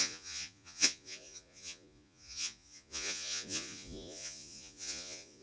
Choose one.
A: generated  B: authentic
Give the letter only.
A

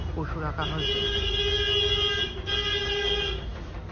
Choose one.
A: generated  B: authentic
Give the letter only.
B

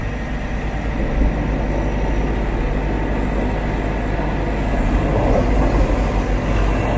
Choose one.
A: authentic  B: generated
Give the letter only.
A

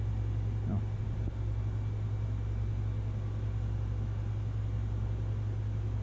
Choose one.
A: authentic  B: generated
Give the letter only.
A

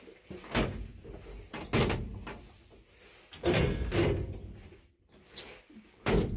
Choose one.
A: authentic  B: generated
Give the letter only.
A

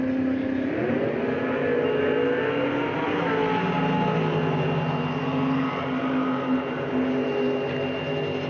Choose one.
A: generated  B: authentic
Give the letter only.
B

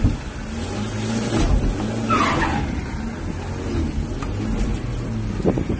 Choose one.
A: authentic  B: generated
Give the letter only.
A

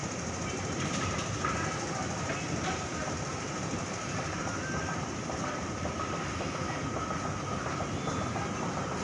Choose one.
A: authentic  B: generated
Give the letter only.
A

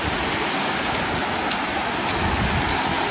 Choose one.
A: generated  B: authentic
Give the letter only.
B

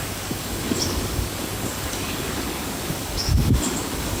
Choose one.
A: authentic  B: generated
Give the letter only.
B